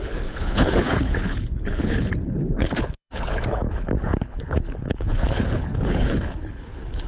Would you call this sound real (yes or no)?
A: no